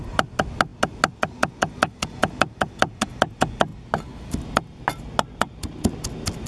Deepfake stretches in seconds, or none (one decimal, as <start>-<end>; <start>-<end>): none